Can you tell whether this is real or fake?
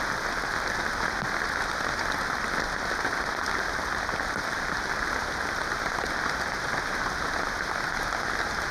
real